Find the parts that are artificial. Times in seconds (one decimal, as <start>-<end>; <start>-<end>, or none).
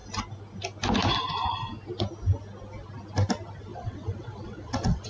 3.7-5.1